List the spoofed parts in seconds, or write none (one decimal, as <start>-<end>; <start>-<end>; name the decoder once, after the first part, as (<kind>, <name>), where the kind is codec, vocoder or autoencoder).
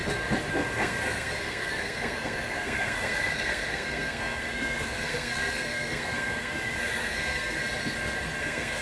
0.5-7.6 (codec, SNAC); 8.4-8.8